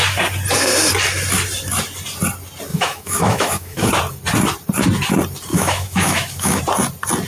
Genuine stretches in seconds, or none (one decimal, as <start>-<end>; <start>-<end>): 0.0-2.7; 3.9-5.5; 6.6-7.3